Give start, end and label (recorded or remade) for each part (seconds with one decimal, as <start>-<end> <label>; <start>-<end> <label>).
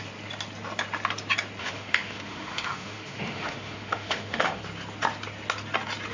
0.0-1.6 recorded; 1.6-4.6 remade; 4.6-6.1 recorded